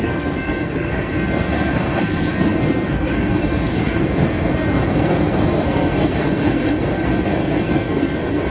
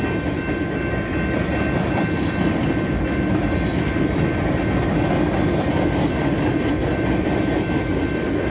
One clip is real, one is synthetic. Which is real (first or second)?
second